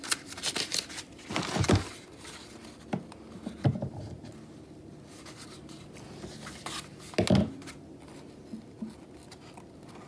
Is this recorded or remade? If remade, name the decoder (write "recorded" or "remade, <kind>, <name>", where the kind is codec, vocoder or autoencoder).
recorded